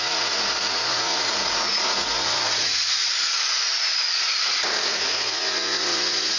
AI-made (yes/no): yes